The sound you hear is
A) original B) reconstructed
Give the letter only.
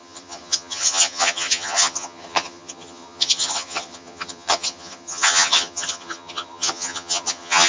B